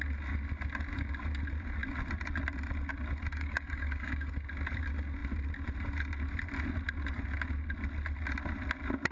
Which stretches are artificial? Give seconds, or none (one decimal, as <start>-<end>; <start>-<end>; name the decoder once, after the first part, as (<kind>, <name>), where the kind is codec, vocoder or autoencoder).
3.3-4.3 (codec, DAC)